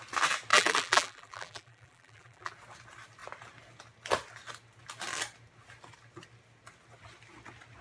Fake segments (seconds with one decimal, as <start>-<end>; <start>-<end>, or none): 0.5-2.5